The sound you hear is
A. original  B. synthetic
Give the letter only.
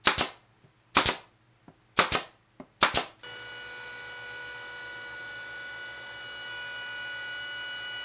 A